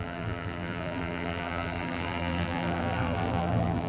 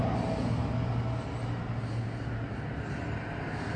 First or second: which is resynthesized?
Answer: first